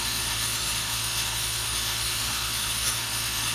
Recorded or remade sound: remade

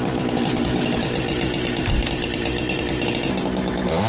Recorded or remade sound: recorded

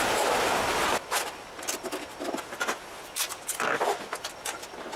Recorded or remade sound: recorded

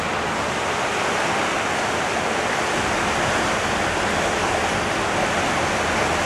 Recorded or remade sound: recorded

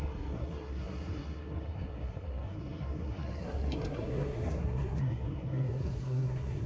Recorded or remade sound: remade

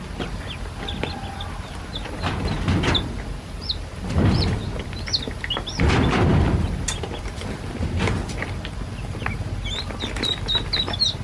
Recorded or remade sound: recorded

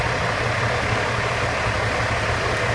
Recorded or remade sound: recorded